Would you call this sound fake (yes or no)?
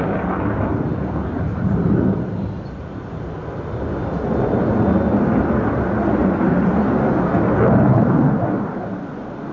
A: no